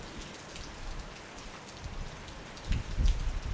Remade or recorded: recorded